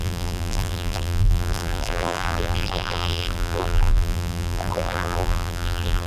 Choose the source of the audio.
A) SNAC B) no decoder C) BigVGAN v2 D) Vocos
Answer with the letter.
C